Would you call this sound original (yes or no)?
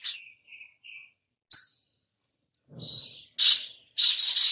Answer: yes